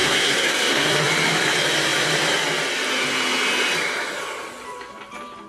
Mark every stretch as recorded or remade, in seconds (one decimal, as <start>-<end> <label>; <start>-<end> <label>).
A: 0.0-1.1 remade; 1.1-5.5 recorded